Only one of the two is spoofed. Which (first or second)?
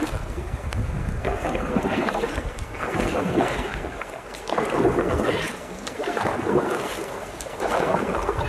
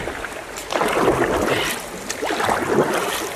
first